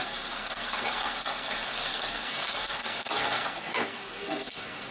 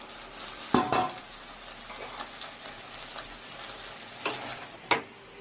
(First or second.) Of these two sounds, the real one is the second